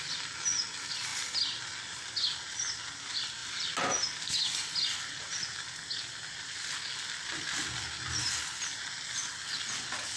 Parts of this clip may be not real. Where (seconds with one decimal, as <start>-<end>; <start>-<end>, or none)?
none